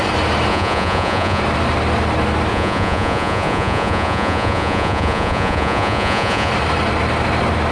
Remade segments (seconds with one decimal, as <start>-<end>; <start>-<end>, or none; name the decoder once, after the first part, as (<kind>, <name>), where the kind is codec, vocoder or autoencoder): 0.5-1.4 (vocoder, Vocos); 2.5-6.5